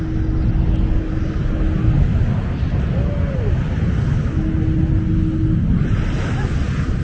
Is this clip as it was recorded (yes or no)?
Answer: yes